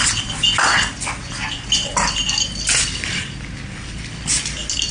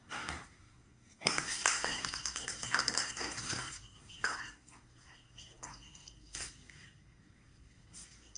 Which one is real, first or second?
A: first